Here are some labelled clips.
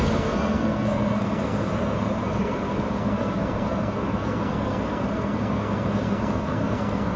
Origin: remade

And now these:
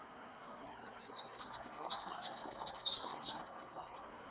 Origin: remade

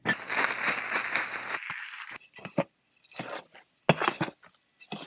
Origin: recorded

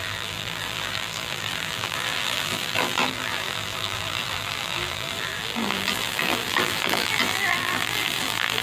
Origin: remade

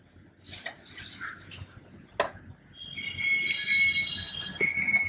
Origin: recorded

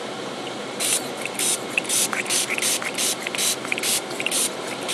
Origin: remade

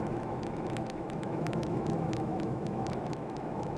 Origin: remade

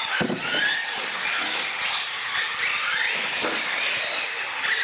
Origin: recorded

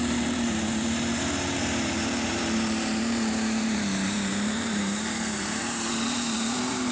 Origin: remade